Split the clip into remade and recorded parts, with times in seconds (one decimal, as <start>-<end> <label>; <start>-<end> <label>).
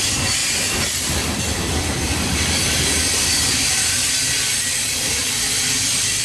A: 0.0-6.2 remade